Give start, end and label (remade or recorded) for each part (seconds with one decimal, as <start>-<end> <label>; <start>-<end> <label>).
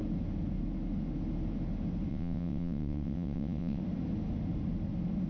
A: 0.0-2.1 recorded; 2.1-3.8 remade; 3.8-5.3 recorded